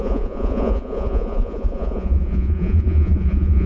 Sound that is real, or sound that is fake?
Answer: fake